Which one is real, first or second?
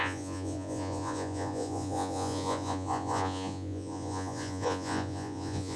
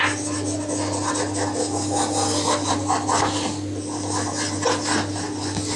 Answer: second